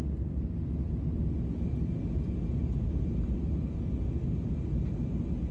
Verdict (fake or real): real